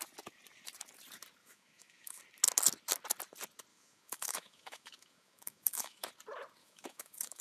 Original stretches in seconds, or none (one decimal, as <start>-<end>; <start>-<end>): 0.0-1.4; 2.2-3.7; 6.1-6.6